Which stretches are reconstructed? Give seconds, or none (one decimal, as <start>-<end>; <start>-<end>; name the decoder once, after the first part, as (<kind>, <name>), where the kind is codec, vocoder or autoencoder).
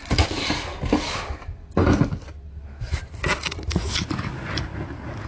none